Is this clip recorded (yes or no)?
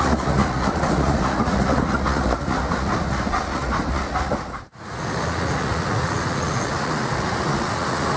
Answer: no